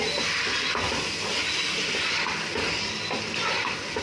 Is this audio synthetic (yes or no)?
no